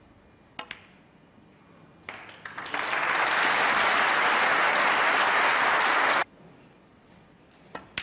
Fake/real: real